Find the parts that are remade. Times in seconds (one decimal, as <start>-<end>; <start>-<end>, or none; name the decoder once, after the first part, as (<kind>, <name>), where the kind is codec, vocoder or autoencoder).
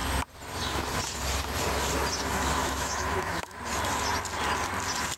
2.6-3.6 (autoencoder, DAC-VAE)